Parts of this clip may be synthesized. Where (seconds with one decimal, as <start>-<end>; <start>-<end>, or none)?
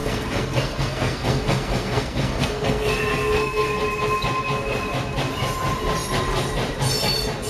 0.0-3.8